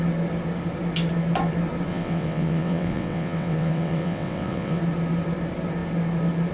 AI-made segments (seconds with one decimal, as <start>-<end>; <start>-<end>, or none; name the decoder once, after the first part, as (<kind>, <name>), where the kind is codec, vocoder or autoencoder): 1.9-4.8 (vocoder, WaveNeXt)

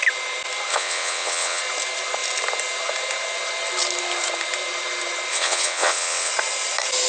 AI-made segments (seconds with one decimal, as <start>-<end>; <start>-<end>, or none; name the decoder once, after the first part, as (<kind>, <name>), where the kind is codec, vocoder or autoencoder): 0.7-1.6 (vocoder, WaveNeXt); 5.3-6.3